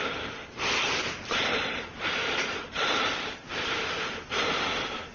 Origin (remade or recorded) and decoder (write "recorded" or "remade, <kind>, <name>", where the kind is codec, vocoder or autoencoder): recorded